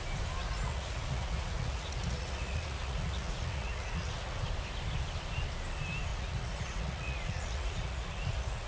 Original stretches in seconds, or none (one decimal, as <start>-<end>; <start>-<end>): 0.0-0.4; 4.4-6.1